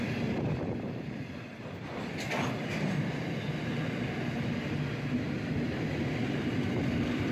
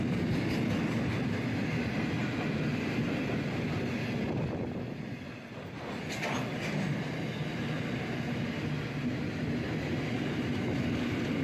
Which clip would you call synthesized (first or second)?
first